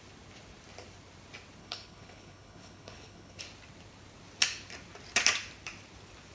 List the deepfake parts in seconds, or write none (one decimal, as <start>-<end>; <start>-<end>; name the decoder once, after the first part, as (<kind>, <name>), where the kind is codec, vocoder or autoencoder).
1.6-3.4 (codec, HILCodec)